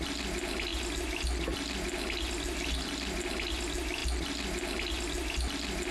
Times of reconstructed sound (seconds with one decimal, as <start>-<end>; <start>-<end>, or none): none